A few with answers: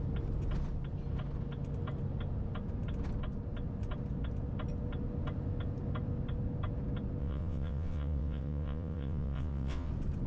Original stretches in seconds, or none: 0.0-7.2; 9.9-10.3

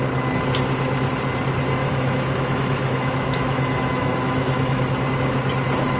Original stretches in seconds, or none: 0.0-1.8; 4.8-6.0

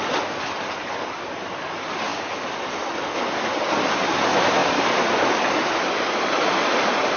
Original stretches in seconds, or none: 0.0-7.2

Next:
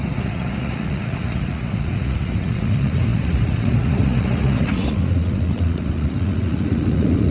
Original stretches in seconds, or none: none

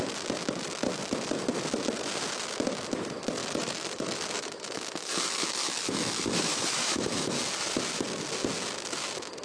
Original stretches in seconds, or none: 0.0-3.4; 7.4-9.4

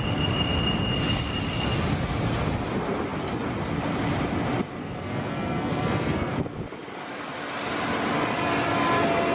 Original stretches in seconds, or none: 0.0-4.8; 6.3-9.3

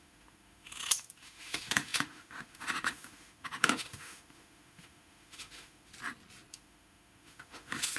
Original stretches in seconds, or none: 5.9-6.5

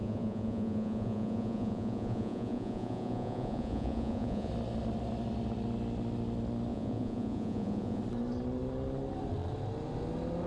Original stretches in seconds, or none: 4.5-6.7; 8.0-10.5